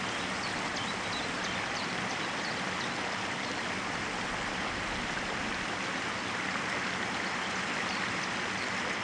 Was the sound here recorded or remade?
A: recorded